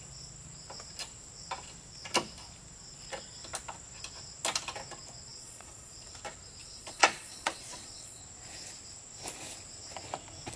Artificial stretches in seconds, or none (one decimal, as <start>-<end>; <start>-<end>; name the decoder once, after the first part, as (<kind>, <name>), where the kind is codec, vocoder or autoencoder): 5.3-6.1 (vocoder, Vocos); 6.6-8.2